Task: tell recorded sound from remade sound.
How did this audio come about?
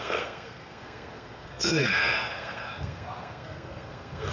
remade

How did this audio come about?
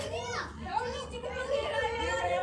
remade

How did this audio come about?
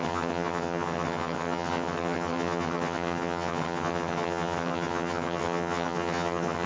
remade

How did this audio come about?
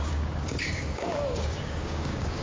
remade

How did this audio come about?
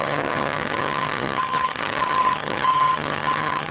remade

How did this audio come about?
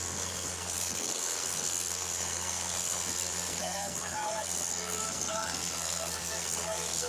remade